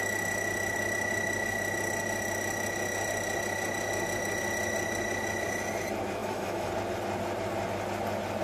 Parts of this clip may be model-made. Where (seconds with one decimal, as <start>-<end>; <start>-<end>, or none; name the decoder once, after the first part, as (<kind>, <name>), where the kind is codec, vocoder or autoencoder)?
6.2-6.7 (autoencoder, DAC-VAE)